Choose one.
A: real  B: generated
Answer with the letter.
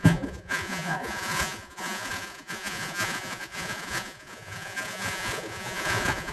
B